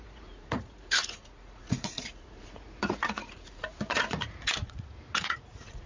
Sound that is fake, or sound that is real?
fake